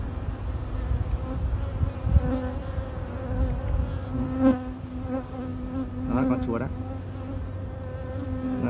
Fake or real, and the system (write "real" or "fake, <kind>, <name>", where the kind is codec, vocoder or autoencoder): real